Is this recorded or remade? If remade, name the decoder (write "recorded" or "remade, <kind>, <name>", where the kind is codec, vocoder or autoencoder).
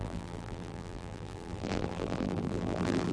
remade, vocoder, BigVGAN v2